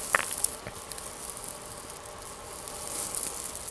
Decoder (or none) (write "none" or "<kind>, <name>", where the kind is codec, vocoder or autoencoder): none